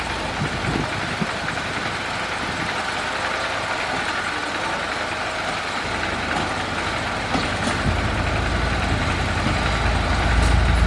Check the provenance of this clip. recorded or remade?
recorded